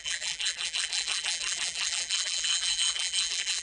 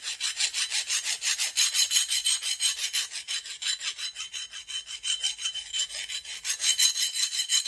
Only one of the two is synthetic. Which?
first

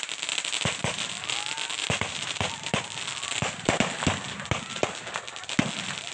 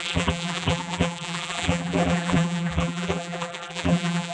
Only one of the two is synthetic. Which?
second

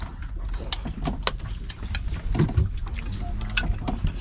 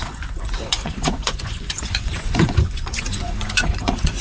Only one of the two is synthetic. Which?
second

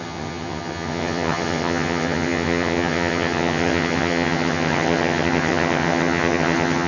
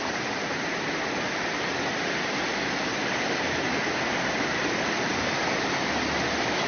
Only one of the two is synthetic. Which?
first